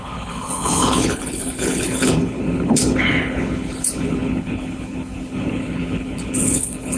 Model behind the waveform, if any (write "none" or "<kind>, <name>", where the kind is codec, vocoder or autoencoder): codec, HILCodec